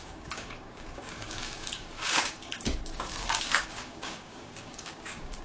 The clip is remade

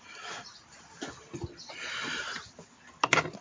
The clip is recorded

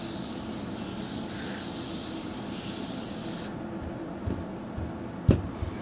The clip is recorded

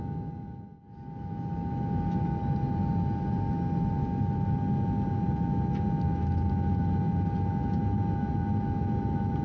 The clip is recorded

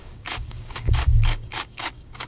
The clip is remade